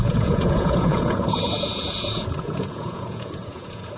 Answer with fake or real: fake